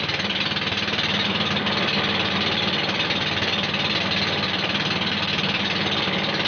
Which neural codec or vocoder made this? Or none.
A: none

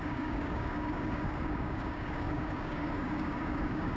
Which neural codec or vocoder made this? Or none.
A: codec, DAC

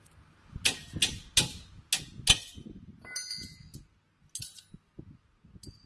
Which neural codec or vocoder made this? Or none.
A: none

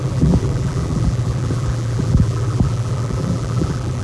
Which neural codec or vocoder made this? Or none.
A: vocoder, BigVGAN v2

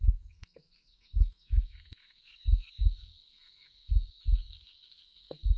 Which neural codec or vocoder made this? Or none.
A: codec, SNAC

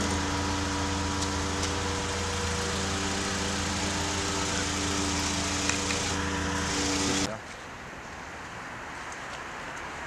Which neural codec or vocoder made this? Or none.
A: none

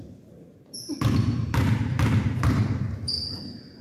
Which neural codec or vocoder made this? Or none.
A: vocoder, BigVGAN v2